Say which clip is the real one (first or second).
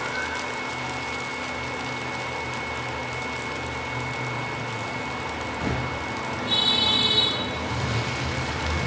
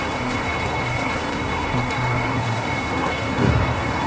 first